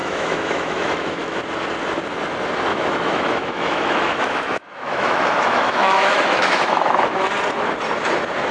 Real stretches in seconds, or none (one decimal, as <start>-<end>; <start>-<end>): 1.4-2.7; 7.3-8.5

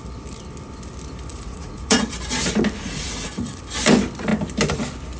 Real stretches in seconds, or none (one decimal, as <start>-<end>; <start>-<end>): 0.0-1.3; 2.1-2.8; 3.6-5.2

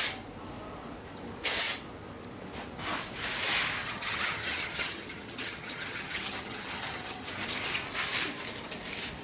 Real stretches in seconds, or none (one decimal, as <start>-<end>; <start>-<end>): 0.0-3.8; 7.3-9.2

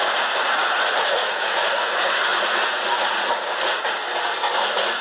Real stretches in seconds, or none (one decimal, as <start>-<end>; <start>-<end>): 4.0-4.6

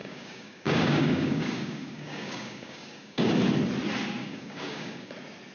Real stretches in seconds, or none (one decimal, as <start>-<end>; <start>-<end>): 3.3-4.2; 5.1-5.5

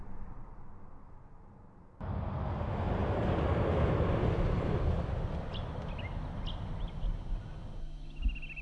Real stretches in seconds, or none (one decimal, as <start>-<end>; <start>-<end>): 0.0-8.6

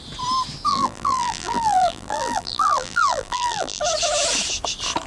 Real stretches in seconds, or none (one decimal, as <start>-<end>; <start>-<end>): 0.0-0.7; 3.8-5.1

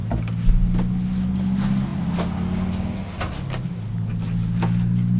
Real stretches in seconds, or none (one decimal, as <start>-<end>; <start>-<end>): 0.0-5.2